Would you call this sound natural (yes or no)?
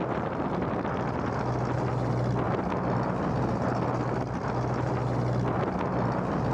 yes